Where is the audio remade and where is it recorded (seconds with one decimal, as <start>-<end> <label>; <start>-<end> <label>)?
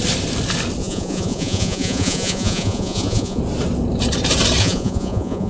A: 0.0-0.8 recorded; 0.8-3.4 remade; 3.4-4.6 recorded; 4.6-5.5 remade